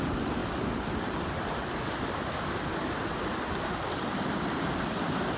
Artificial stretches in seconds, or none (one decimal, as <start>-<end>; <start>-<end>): none